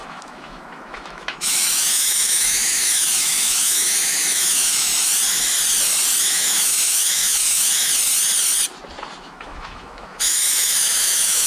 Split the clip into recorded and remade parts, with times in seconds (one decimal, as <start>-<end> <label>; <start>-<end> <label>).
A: 0.0-4.9 remade; 4.9-6.2 recorded; 6.2-7.9 remade; 7.9-9.2 recorded; 9.2-11.5 remade